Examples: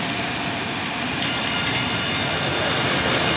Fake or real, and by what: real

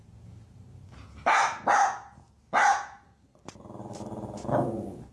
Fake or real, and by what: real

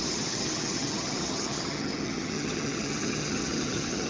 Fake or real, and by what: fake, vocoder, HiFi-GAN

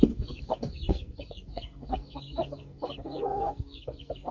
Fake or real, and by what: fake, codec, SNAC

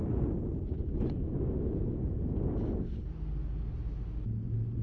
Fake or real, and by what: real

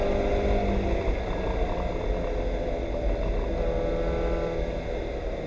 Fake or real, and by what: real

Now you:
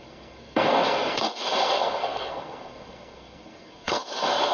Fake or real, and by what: fake, codec, SNAC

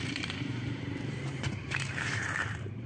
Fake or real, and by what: fake, vocoder, BigVGAN v2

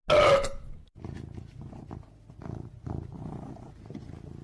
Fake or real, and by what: real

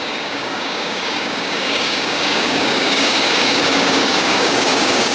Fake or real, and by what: fake, codec, DAC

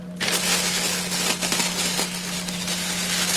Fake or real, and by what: real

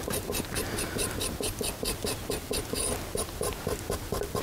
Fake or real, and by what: real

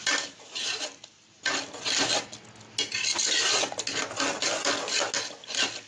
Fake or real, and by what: real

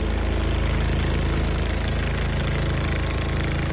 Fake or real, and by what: real